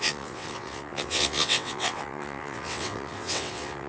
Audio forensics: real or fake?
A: fake